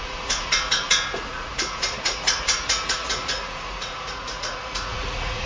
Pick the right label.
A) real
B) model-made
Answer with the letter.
B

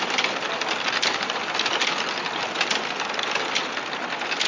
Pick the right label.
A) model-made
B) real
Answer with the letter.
B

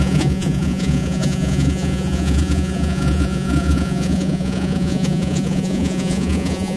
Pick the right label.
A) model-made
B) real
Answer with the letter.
A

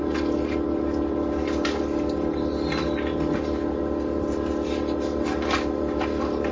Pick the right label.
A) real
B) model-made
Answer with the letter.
A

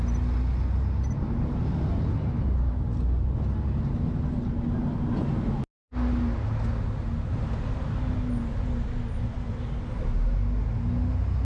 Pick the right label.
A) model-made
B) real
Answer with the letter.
B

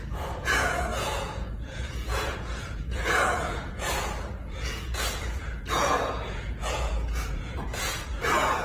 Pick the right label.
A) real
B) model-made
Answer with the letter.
B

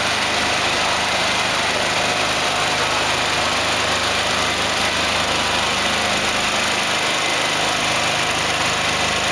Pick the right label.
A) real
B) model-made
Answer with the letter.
B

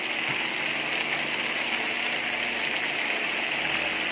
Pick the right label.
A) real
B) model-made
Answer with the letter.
B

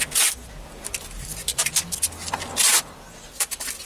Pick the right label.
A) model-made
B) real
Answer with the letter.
B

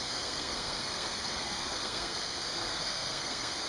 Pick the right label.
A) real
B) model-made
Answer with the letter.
B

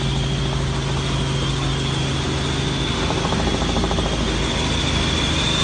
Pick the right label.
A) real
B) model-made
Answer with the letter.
A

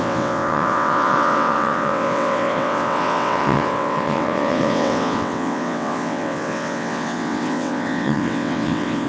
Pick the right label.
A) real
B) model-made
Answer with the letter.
B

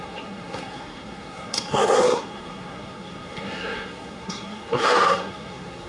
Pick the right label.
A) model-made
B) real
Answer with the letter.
A